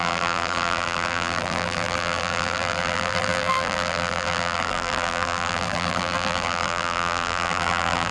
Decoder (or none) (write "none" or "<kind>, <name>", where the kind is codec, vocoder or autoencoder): vocoder, BigVGAN v2